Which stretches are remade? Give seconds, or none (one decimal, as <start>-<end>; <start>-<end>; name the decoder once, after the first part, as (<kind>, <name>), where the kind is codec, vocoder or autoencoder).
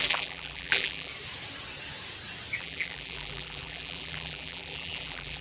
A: 0.0-1.1 (vocoder, BigVGAN v2); 2.6-5.4